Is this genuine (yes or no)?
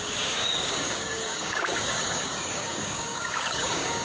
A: no